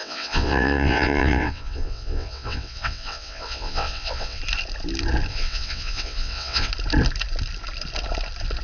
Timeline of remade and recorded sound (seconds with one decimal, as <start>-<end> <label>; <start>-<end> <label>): 0.0-4.4 remade; 4.4-5.3 recorded; 5.3-6.7 remade; 6.7-8.6 recorded